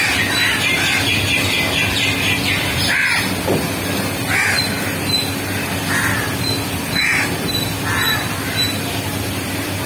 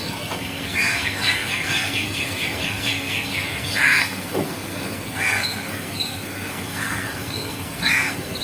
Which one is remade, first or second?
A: second